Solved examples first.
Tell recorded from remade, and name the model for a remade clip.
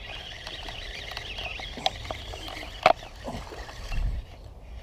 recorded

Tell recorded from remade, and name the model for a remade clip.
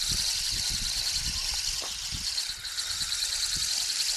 recorded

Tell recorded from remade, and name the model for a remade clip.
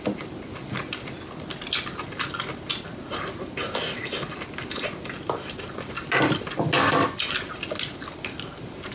recorded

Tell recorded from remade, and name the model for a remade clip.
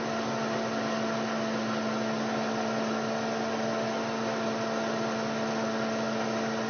recorded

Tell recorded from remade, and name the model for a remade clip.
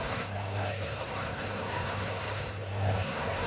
remade, codec, SNAC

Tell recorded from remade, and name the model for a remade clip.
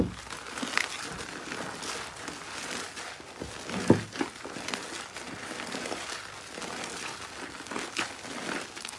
recorded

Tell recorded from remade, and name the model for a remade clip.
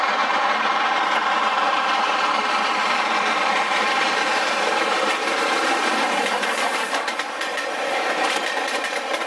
remade, vocoder, BigVGAN v2